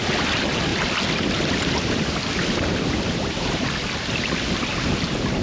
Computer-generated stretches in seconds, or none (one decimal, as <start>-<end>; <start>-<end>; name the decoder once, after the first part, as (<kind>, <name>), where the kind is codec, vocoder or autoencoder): none